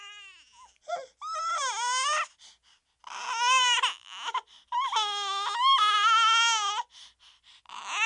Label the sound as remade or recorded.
recorded